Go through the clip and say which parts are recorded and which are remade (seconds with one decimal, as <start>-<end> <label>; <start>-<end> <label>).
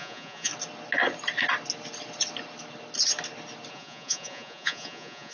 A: 0.0-0.5 remade; 0.5-3.7 recorded; 3.7-5.3 remade